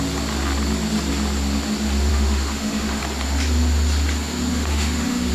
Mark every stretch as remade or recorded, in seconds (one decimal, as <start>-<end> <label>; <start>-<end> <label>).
0.0-2.1 recorded; 2.1-3.0 remade; 3.0-4.5 recorded; 4.5-5.3 remade